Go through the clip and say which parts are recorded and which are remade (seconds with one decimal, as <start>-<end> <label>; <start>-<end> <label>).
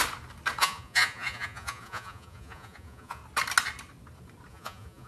0.0-0.6 recorded; 0.6-3.2 remade; 3.2-4.5 recorded; 4.5-5.1 remade